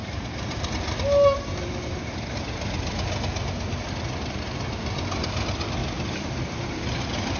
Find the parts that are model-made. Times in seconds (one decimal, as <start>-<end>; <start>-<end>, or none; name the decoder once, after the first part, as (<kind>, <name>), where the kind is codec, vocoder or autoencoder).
0.0-0.7 (vocoder, BigVGAN v2); 1.5-2.1; 5.8-7.4